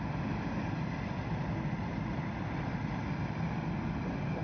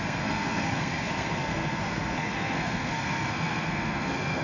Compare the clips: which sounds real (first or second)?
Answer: first